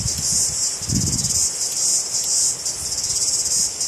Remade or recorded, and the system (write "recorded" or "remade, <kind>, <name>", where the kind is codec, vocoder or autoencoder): recorded